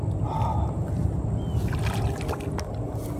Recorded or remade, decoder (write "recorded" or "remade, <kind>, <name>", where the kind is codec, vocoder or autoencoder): recorded